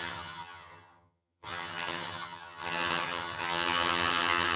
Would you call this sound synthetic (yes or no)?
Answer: yes